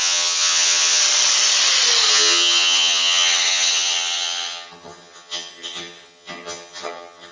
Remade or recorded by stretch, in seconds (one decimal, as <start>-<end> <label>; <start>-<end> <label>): 0.0-1.0 remade; 1.0-2.1 recorded; 2.1-7.3 remade

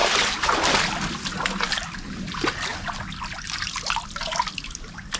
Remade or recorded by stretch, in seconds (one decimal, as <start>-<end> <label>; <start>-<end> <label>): 0.0-1.7 recorded; 1.7-2.7 remade; 2.7-3.9 recorded; 3.9-5.2 remade

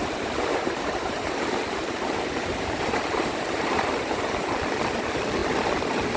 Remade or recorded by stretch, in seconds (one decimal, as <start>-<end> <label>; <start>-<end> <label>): 0.0-0.5 recorded; 0.5-4.2 remade; 4.2-6.2 recorded

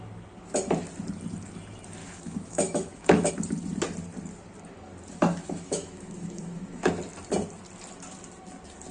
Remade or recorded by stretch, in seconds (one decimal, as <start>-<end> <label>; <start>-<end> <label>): 0.0-2.0 recorded; 2.0-3.3 remade; 3.3-5.2 recorded; 5.2-6.9 remade; 6.9-8.9 recorded